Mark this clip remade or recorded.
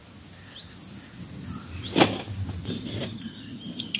recorded